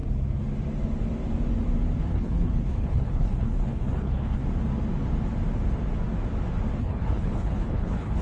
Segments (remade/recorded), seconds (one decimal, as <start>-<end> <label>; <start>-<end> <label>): 0.0-2.0 recorded; 2.0-4.4 remade; 4.4-6.8 recorded; 6.8-8.2 remade